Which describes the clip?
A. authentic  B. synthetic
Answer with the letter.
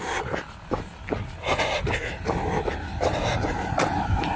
A